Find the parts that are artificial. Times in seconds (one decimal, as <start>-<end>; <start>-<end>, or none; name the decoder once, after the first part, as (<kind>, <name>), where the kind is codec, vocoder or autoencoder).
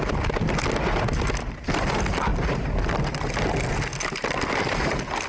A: none